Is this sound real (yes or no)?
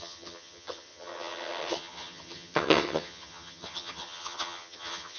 no